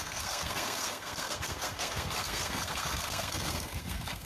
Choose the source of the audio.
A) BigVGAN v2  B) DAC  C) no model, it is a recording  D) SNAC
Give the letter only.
D